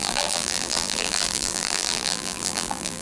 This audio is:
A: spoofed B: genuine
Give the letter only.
A